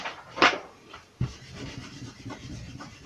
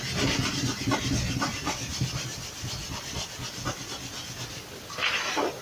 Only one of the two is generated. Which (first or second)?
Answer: first